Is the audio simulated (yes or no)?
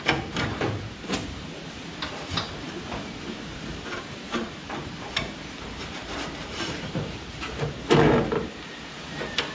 yes